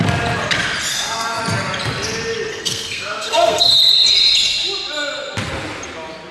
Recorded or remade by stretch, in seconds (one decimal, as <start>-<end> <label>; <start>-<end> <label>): 0.0-0.9 recorded; 0.9-1.4 remade; 1.4-2.5 recorded; 2.5-3.7 remade; 3.7-6.3 recorded